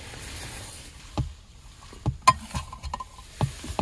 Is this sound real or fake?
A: real